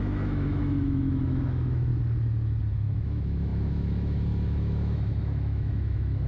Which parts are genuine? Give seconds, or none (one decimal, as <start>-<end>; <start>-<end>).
1.9-2.7